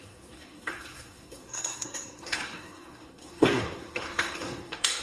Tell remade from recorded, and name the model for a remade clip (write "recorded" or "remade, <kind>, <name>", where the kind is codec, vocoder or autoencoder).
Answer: remade, codec, SNAC